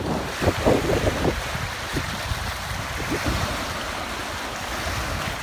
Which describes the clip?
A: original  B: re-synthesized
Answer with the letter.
A